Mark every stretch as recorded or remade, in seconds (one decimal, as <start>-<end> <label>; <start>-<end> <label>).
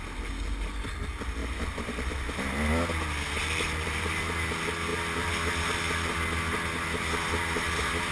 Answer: 0.0-1.4 recorded; 1.4-2.5 remade; 2.5-3.4 recorded; 3.4-4.2 remade; 4.2-8.1 recorded